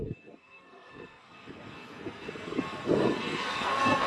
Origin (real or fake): fake